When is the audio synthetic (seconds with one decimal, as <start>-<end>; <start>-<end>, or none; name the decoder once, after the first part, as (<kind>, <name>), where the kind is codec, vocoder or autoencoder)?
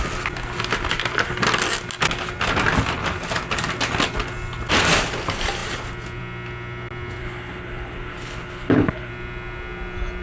7.2-9.1 (codec, HILCodec)